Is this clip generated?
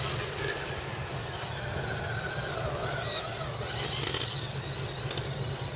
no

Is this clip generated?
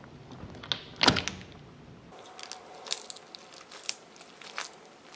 no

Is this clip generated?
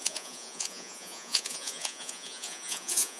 yes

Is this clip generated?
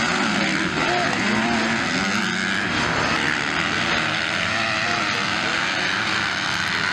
no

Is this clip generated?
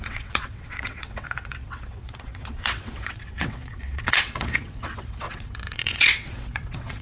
yes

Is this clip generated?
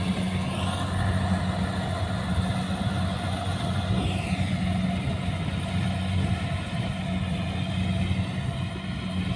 no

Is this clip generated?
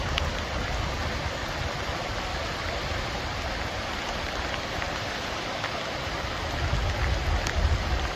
no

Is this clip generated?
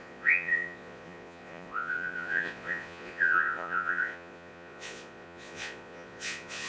yes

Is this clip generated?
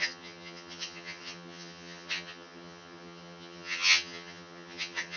yes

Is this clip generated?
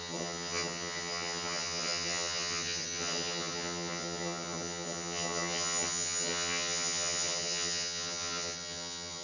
yes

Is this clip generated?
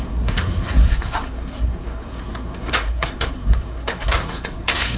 yes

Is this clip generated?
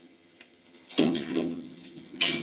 yes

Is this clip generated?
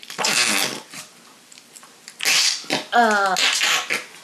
no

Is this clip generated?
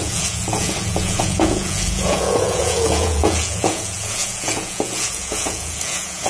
yes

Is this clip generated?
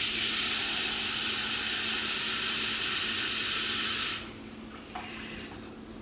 no